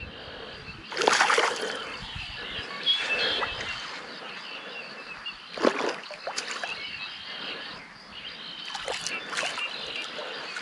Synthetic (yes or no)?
no